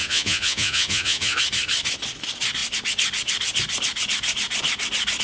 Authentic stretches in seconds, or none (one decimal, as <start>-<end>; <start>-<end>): 1.4-5.2